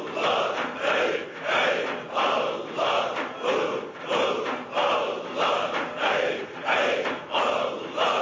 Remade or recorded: recorded